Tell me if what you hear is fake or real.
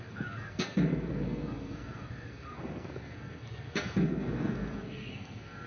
fake